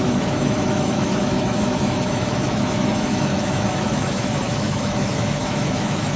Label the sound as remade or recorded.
remade